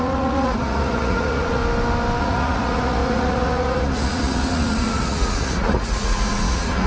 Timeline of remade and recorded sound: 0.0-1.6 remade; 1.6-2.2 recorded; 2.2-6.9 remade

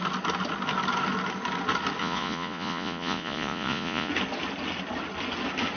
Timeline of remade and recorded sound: 0.0-2.0 recorded; 2.0-4.1 remade; 4.1-5.8 recorded

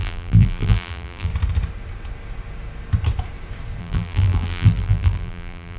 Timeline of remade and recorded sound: 0.0-1.3 remade; 1.3-3.8 recorded; 3.8-5.8 remade

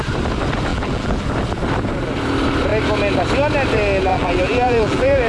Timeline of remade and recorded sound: 0.0-0.7 recorded; 0.7-1.3 remade; 1.3-4.1 recorded; 4.1-5.3 remade

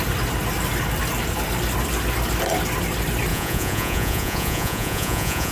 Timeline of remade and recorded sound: 0.0-3.3 recorded; 3.3-5.5 remade